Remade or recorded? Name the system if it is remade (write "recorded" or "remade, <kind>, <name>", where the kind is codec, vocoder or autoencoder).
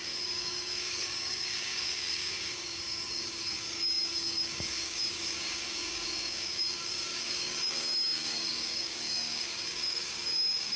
remade, codec, DAC